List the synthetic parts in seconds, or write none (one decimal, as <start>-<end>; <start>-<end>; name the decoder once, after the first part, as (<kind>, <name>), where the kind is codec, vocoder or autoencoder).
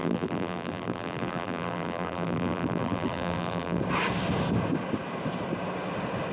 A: 0.0-3.8 (vocoder, BigVGAN v2)